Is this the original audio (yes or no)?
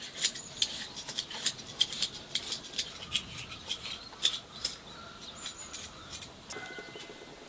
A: yes